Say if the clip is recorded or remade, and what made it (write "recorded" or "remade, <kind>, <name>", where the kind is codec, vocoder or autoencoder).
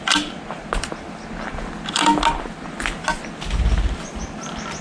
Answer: recorded